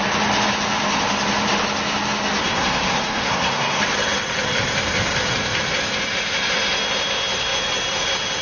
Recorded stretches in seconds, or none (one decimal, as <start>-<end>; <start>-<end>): 0.0-2.4; 3.8-8.4